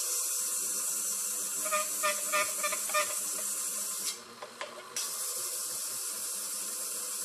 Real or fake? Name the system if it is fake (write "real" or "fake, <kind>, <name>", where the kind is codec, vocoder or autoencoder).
real